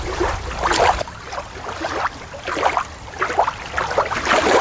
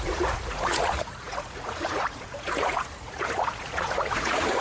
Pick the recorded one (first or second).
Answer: first